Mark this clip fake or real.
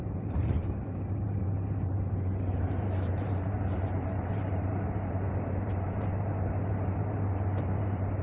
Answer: fake